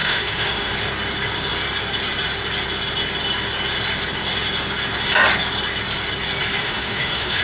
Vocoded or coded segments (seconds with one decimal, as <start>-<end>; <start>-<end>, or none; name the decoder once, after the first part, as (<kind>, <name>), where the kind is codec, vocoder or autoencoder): 0.0-0.7 (autoencoder, DAC-VAE); 6.6-7.4